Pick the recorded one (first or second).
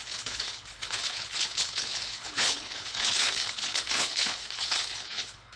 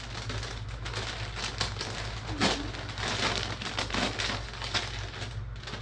second